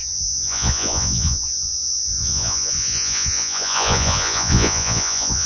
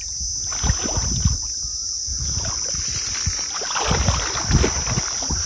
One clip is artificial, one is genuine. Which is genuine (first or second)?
second